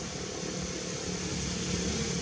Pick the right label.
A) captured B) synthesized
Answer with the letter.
A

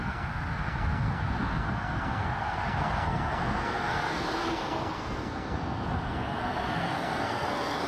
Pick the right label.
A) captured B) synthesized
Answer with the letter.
B